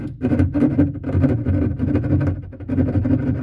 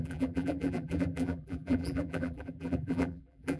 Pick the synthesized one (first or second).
second